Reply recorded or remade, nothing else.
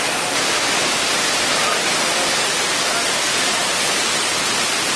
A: recorded